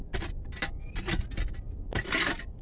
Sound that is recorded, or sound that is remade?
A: recorded